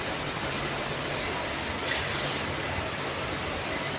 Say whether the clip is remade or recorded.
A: recorded